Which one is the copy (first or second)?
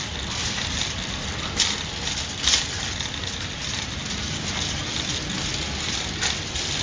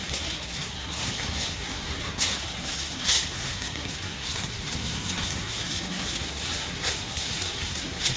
second